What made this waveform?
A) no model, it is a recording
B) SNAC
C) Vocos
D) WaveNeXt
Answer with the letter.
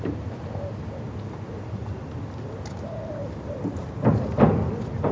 A